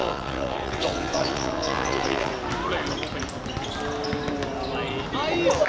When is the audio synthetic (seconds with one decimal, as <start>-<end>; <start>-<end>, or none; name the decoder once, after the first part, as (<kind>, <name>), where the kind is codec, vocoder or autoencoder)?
0.0-2.3 (vocoder, WaveNeXt)